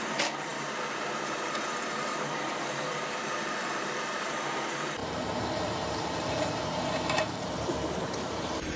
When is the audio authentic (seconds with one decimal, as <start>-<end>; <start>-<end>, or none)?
none